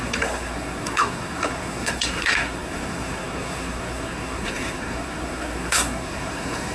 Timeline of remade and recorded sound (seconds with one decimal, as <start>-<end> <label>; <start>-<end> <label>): 0.0-6.7 remade